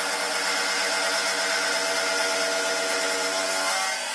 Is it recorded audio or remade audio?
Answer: recorded